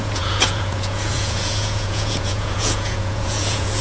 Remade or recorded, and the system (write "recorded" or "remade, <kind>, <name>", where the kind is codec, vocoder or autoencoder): remade, vocoder, Vocos